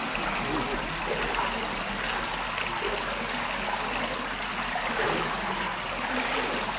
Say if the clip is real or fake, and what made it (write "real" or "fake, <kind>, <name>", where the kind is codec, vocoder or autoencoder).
real